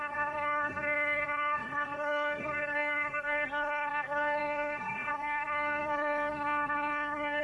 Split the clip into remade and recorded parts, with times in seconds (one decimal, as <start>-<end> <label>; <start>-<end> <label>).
0.0-7.4 remade